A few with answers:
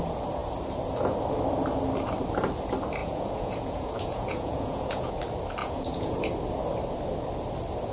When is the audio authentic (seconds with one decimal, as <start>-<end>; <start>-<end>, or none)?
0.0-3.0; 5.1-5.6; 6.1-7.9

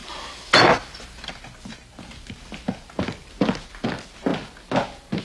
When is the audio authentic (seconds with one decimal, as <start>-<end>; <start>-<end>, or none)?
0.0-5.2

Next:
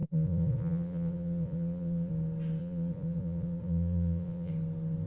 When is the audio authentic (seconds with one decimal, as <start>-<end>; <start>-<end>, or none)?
2.1-2.6; 4.5-5.1

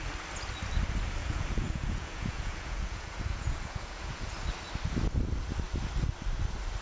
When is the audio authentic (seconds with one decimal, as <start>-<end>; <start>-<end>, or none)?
0.0-1.2; 4.3-6.8

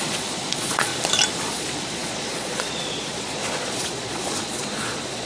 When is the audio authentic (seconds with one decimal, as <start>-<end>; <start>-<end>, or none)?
0.9-1.4